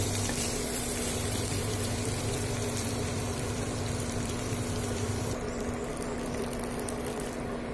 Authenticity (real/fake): fake